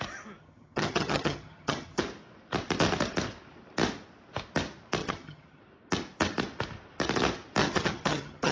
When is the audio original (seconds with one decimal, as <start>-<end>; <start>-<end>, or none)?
0.0-0.4; 2.0-5.0; 5.6-7.6

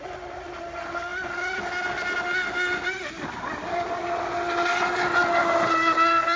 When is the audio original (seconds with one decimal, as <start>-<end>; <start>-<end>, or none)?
0.0-6.4

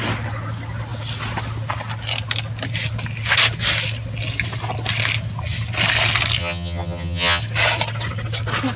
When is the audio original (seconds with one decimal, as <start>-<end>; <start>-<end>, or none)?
0.0-6.4; 7.4-8.8

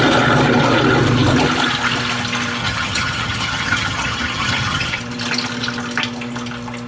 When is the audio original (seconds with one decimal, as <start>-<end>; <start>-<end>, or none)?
0.0-2.6; 5.0-6.9

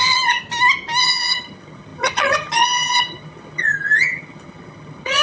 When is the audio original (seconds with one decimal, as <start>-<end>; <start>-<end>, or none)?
0.4-1.0

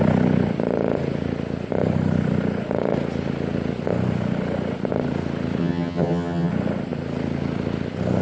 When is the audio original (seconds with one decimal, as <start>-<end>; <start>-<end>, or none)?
0.0-5.6; 6.5-8.2